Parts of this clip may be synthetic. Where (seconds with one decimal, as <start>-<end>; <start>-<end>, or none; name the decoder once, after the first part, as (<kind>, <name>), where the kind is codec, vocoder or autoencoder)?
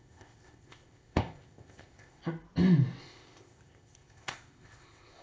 0.0-2.2 (codec, ZipCodec); 3.0-5.2